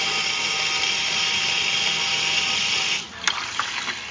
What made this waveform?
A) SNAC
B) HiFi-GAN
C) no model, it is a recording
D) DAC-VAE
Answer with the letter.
C